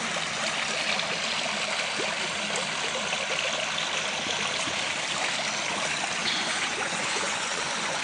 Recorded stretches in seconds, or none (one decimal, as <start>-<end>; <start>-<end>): 0.0-6.2